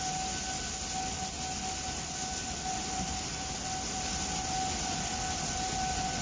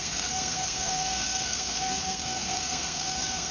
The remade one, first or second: second